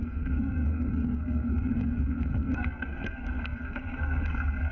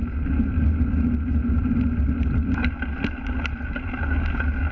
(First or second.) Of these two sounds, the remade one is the first